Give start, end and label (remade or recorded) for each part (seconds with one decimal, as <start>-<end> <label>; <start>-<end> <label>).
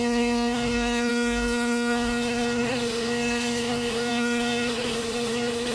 0.0-5.7 remade